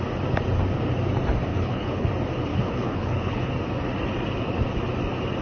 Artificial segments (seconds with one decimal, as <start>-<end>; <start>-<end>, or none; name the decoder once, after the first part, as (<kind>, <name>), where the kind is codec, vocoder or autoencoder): 1.5-2.1 (codec, HILCodec); 2.5-3.5